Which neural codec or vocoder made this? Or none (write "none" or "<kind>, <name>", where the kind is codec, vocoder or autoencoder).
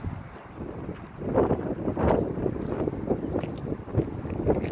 none